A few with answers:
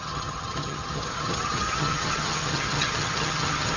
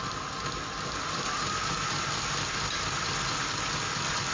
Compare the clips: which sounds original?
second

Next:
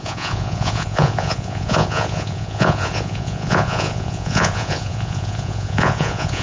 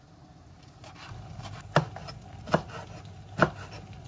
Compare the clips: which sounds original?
second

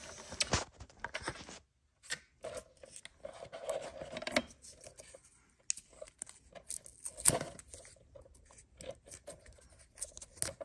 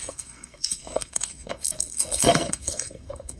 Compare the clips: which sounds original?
first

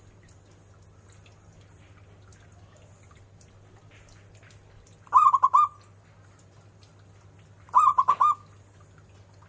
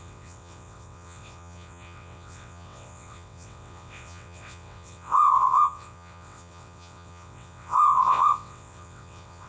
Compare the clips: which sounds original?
first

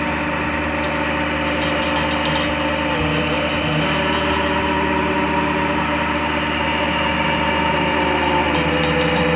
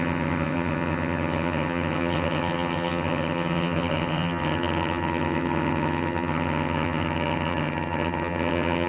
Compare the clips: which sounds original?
first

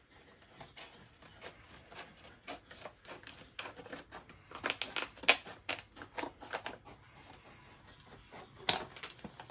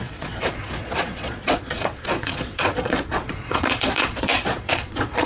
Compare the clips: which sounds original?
first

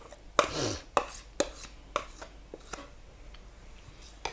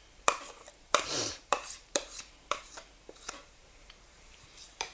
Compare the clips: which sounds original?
first